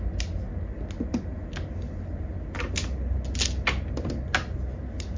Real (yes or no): yes